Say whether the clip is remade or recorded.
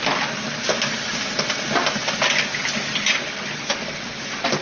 recorded